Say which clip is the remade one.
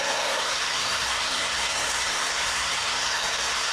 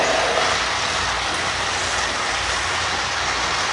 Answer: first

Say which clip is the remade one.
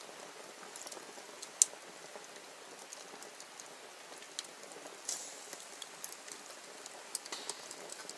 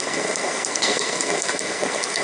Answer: second